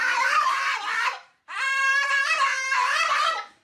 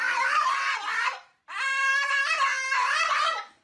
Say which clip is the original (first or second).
second